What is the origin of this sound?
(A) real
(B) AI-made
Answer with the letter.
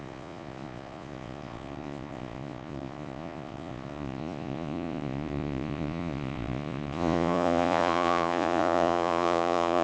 B